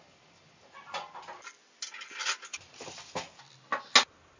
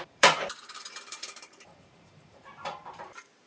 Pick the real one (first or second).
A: first